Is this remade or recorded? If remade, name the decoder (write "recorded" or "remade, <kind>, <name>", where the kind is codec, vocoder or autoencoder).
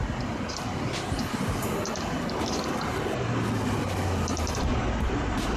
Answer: recorded